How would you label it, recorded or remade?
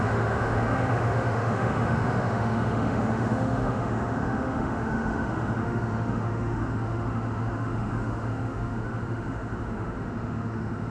remade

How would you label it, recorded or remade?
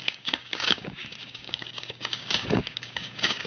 remade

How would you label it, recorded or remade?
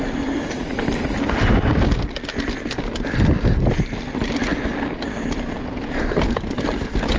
recorded